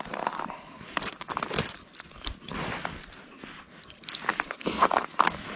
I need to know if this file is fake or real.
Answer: real